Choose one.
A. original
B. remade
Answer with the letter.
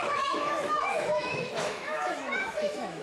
B